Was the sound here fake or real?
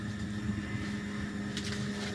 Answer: real